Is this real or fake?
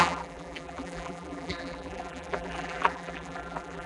fake